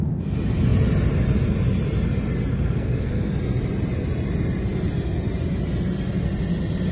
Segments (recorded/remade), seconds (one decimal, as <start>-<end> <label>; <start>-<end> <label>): 0.0-2.5 recorded; 2.5-3.3 remade; 3.3-6.9 recorded